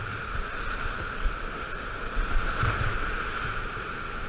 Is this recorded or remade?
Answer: recorded